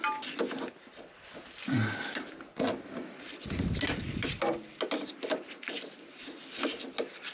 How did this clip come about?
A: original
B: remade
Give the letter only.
A